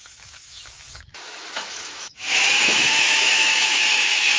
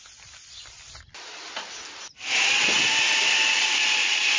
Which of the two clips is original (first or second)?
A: second